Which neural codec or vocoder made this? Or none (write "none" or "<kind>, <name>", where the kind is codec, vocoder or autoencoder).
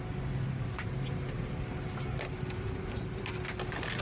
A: none